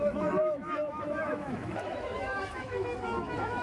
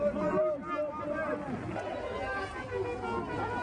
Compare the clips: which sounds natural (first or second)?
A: second